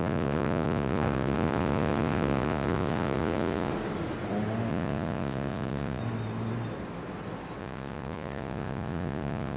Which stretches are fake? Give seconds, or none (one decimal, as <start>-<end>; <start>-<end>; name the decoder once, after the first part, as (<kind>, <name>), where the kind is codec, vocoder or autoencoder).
0.0-3.7 (vocoder, Vocos); 4.7-6.0; 7.6-9.6